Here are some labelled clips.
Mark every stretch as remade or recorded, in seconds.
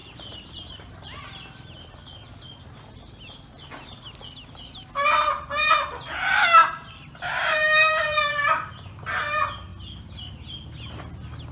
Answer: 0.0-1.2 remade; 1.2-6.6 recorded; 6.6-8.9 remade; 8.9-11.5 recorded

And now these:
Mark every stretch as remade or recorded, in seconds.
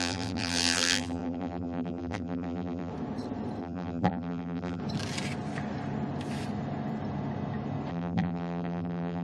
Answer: 0.0-2.9 remade; 2.9-3.6 recorded; 3.6-4.8 remade; 4.8-7.9 recorded; 7.9-9.2 remade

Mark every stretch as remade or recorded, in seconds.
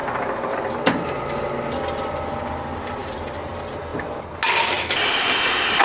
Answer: 0.0-0.7 remade; 0.7-5.8 recorded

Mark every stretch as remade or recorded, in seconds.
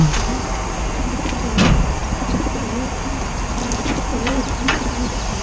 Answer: 0.0-4.1 recorded; 4.1-5.4 remade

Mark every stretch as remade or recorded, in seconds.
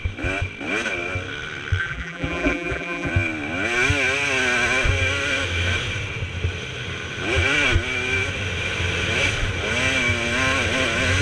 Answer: 0.0-1.8 recorded; 1.8-3.1 remade; 3.1-11.2 recorded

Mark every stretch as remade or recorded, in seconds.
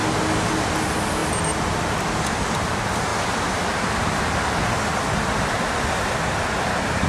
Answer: 0.0-0.5 recorded; 0.5-3.1 remade; 3.1-5.4 recorded; 5.4-7.1 remade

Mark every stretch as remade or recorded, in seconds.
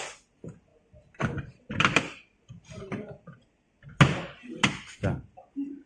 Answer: 0.0-0.7 recorded; 0.7-3.9 remade; 3.9-5.9 recorded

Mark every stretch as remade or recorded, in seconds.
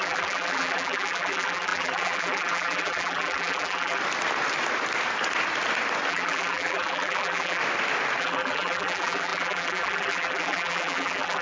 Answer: 0.0-4.0 remade; 4.0-6.1 recorded; 6.1-7.6 remade; 7.6-8.2 recorded; 8.2-11.4 remade